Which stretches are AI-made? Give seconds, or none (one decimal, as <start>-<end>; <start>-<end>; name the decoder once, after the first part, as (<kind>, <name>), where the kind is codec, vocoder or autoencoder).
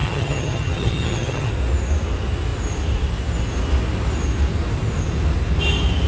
0.0-1.5 (vocoder, HiFi-GAN)